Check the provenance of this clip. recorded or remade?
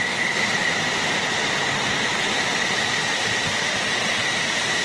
recorded